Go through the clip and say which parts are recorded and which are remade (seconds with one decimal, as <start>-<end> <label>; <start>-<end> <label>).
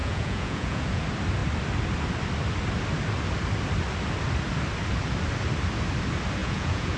0.0-1.0 remade; 1.0-6.4 recorded; 6.4-7.0 remade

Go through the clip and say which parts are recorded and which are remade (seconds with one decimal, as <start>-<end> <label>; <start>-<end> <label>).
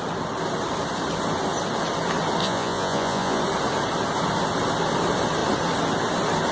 0.0-2.4 recorded; 2.4-3.4 remade; 3.4-6.5 recorded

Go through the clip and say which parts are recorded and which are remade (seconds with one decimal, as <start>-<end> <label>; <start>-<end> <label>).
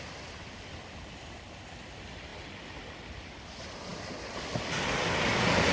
0.0-5.7 recorded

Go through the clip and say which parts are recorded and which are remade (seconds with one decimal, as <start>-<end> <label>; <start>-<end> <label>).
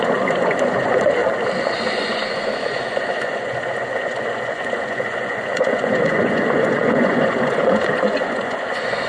0.0-1.2 remade; 1.2-1.9 recorded; 1.9-9.1 remade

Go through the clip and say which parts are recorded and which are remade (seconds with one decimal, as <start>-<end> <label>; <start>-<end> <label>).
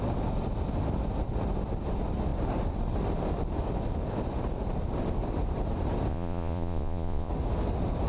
0.0-6.1 recorded; 6.1-7.3 remade; 7.3-8.1 recorded